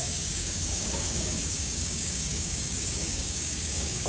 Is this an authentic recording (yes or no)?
no